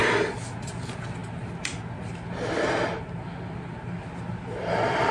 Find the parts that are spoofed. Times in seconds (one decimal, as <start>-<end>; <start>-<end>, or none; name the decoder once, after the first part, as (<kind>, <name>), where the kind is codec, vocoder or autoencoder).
none